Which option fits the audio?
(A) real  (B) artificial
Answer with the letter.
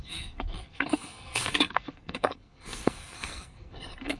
B